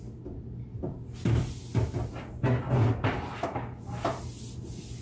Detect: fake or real real